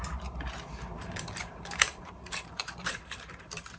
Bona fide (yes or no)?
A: no